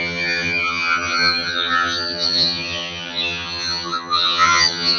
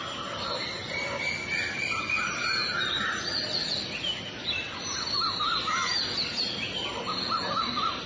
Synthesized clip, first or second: first